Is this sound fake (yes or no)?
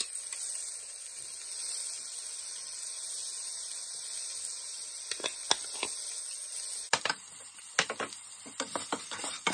no